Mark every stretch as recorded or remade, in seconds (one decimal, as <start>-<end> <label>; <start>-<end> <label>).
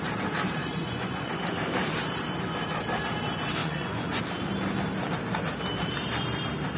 0.0-0.6 recorded; 0.6-1.3 remade; 1.3-3.6 recorded; 3.6-4.2 remade; 4.2-6.8 recorded